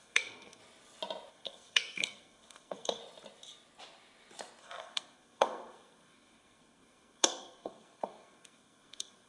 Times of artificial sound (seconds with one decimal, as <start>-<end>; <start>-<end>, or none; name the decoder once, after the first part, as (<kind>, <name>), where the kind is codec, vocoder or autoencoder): 0.0-0.6 (codec, SNAC); 1.3-3.0; 4.6-9.3